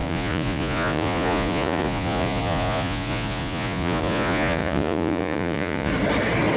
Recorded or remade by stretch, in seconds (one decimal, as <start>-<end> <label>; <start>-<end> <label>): 0.0-5.9 remade; 5.9-6.6 recorded